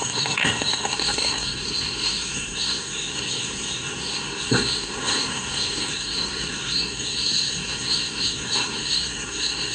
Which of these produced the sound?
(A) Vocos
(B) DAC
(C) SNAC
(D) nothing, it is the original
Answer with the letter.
C